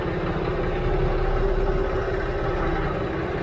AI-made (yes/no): no